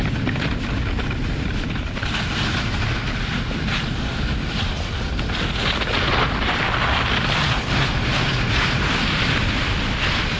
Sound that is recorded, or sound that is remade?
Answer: recorded